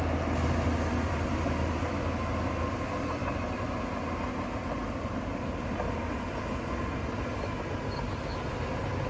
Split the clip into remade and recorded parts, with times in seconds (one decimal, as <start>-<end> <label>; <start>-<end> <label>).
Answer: 0.0-9.1 recorded